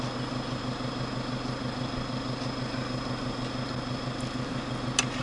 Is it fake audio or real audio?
real